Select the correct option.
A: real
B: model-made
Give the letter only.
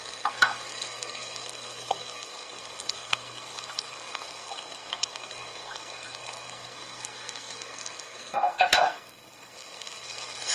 B